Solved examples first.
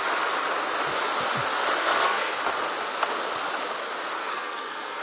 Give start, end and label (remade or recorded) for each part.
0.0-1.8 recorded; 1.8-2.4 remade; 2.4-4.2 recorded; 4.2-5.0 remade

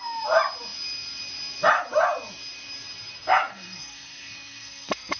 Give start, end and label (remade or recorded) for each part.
0.0-3.5 recorded; 3.5-5.2 remade

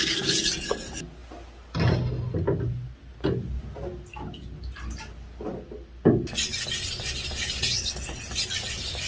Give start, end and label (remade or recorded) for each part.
0.0-9.1 recorded

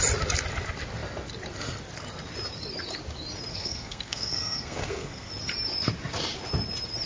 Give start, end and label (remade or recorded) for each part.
0.0-3.5 recorded; 3.5-5.3 remade; 5.3-7.1 recorded

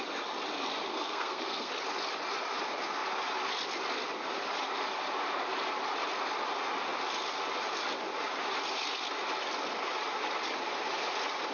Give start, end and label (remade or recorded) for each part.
0.0-0.9 recorded; 0.9-1.7 remade; 1.7-11.5 recorded

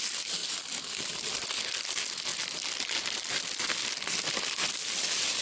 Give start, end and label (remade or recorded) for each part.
0.0-5.4 recorded

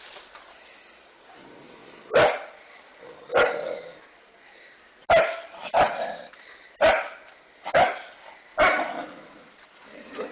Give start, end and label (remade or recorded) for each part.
0.0-10.3 recorded

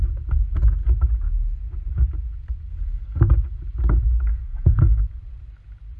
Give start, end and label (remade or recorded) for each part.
0.0-2.7 recorded; 2.7-3.2 remade; 3.2-4.3 recorded; 4.3-5.0 remade; 5.0-6.0 recorded